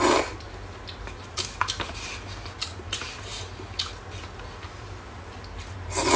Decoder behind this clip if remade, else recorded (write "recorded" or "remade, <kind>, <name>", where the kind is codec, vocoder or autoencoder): recorded